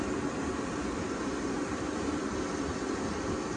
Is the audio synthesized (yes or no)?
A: no